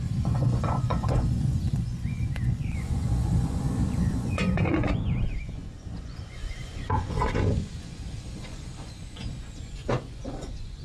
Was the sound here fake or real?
fake